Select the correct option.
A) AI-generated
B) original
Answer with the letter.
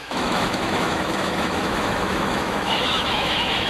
A